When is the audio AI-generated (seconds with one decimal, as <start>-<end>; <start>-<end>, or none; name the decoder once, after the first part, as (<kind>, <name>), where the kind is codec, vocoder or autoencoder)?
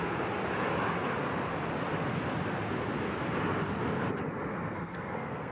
4.5-5.5 (codec, SNAC)